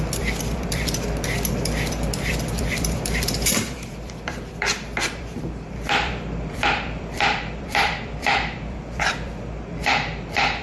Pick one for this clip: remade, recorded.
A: remade